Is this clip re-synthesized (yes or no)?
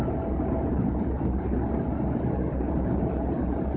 no